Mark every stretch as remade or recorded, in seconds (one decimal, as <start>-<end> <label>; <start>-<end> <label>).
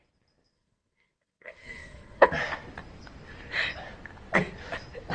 0.0-0.5 recorded; 0.5-2.3 remade; 2.3-5.1 recorded